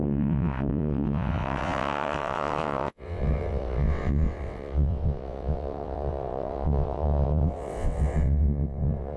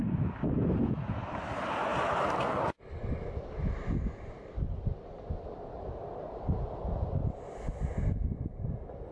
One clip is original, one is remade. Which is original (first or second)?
second